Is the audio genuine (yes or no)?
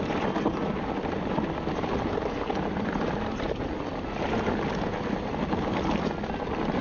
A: yes